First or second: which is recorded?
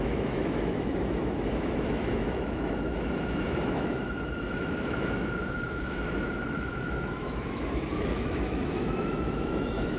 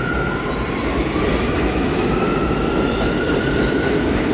second